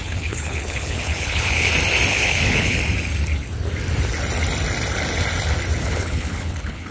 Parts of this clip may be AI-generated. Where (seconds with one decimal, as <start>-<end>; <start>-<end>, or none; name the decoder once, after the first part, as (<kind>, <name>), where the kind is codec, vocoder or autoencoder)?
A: 0.0-1.7 (codec, HILCodec); 2.1-2.8; 5.8-6.9